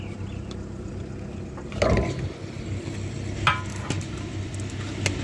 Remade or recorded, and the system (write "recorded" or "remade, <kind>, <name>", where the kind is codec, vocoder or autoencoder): recorded